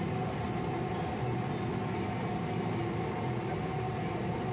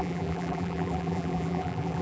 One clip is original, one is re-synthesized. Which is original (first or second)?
first